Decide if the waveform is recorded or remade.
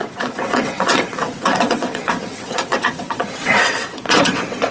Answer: remade